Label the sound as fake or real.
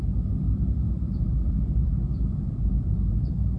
fake